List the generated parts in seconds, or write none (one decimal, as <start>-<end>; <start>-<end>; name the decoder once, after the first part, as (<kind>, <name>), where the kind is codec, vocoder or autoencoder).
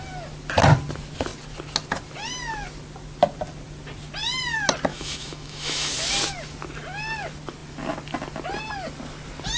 4.9-5.9 (autoencoder, DAC-VAE)